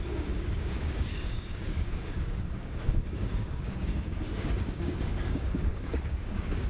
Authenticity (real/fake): fake